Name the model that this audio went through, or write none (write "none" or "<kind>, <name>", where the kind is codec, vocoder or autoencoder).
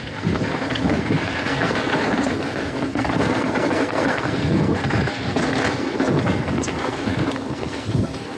codec, SNAC